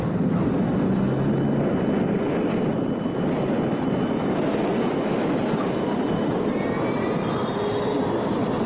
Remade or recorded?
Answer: recorded